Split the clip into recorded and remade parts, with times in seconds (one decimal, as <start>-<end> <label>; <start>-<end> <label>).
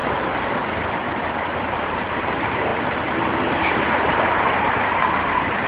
0.0-0.9 recorded; 0.9-2.7 remade; 2.7-3.9 recorded; 3.9-5.7 remade